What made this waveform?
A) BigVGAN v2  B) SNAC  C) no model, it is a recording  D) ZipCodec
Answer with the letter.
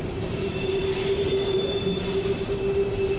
A